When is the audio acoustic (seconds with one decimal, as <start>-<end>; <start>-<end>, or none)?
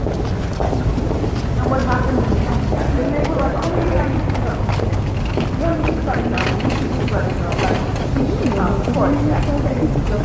0.0-1.8; 2.5-10.2